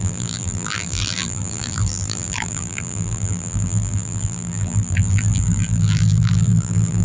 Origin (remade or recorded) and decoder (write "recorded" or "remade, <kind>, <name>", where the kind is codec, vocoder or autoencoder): remade, vocoder, BigVGAN v2